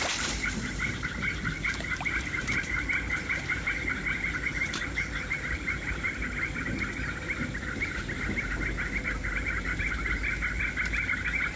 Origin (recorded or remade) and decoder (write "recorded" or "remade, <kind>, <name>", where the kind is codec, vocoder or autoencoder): recorded